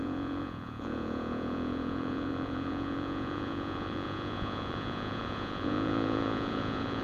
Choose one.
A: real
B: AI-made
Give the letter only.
B